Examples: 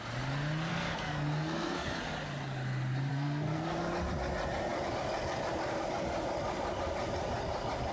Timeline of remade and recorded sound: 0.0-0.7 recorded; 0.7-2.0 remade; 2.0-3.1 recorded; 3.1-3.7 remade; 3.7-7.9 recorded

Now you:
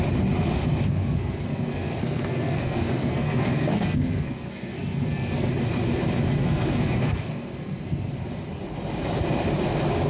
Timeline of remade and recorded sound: 0.0-0.9 recorded; 0.9-5.5 remade; 5.5-6.4 recorded; 6.4-8.1 remade; 8.1-10.1 recorded

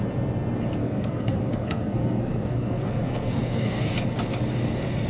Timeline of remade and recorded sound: 0.0-0.8 recorded; 0.8-3.9 remade; 3.9-5.1 recorded

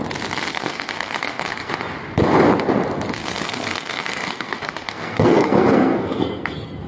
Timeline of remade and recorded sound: 0.0-0.5 recorded; 0.5-1.7 remade; 1.7-3.2 recorded; 3.2-6.9 remade